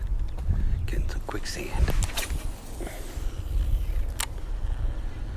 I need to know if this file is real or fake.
real